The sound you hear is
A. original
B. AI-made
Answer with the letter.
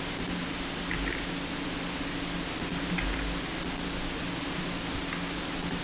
A